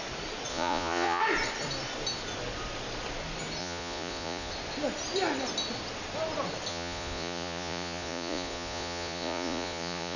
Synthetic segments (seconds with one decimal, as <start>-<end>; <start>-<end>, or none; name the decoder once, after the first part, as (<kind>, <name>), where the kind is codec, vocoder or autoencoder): 0.5-1.2 (vocoder, Vocos); 3.6-4.5; 6.7-10.2